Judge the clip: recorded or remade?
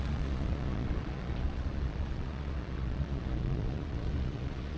remade